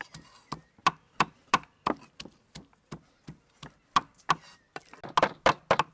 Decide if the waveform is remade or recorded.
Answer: recorded